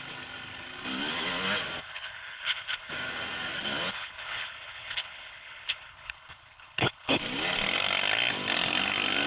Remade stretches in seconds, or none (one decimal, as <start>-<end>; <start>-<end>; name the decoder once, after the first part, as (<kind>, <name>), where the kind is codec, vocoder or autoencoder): 1.8-2.9 (codec, HILCodec); 3.9-7.2